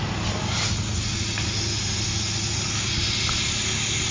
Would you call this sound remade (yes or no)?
no